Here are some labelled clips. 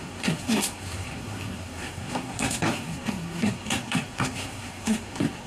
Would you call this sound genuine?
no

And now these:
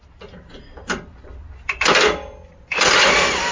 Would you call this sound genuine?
yes